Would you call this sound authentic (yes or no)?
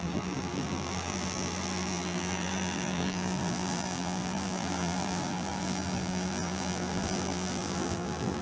no